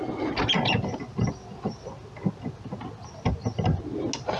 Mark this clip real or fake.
real